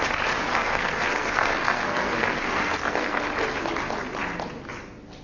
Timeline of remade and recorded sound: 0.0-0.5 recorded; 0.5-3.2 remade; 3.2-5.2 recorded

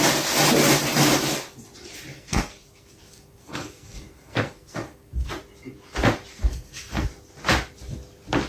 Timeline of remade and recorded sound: 0.0-2.1 recorded; 2.1-5.3 remade; 5.3-6.3 recorded; 6.3-7.1 remade; 7.1-8.5 recorded

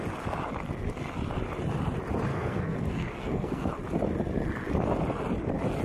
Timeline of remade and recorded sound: 0.0-2.3 recorded; 2.3-3.7 remade; 3.7-5.8 recorded

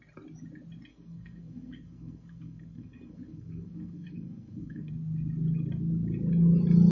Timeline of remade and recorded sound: 0.0-0.9 recorded; 0.9-4.9 remade; 4.9-6.9 recorded

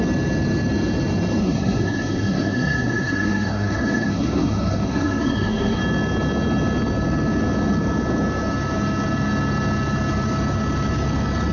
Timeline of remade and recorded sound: 0.0-1.4 recorded; 1.4-5.8 remade; 5.8-11.5 recorded

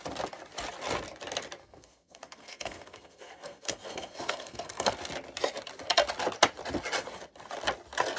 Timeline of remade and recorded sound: 0.0-1.6 recorded; 1.6-4.9 remade; 4.9-8.2 recorded

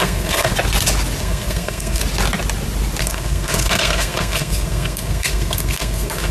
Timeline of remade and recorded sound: 0.0-0.5 remade; 0.5-1.2 recorded; 1.2-2.0 remade; 2.0-3.0 recorded; 3.0-6.3 remade